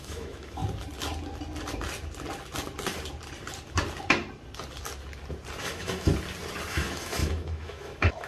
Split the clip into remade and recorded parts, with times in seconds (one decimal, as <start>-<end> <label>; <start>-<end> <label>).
0.0-0.6 remade; 0.6-5.6 recorded; 5.6-6.1 remade; 6.1-6.7 recorded; 6.7-8.3 remade